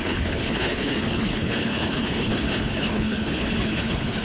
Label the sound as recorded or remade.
remade